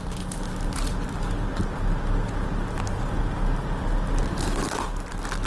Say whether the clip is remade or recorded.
recorded